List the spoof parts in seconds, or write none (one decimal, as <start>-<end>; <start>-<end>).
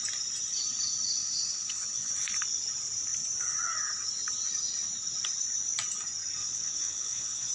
1.2-2.1; 6.4-7.5